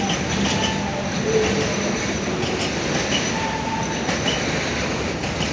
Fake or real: real